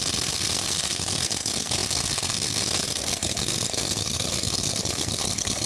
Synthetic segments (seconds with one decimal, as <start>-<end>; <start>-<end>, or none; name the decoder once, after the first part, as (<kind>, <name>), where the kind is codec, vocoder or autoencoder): 0.0-5.7 (codec, SNAC)